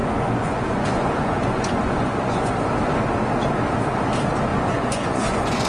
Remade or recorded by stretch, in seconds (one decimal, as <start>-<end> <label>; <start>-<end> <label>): 0.0-2.5 remade; 2.5-4.5 recorded; 4.5-5.7 remade